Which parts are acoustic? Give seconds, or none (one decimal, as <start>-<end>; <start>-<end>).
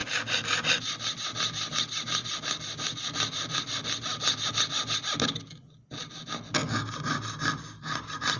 0.0-8.4